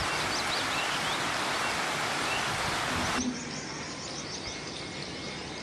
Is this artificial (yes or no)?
no